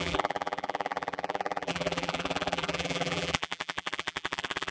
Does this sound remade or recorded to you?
remade